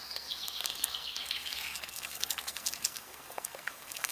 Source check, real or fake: fake